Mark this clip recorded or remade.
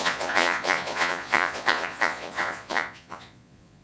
remade